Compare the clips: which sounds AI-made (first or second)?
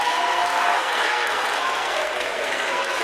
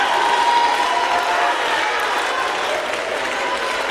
first